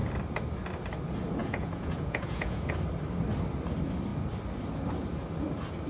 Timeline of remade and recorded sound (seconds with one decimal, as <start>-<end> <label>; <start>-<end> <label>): 0.0-1.4 recorded; 1.4-2.7 remade; 2.7-5.9 recorded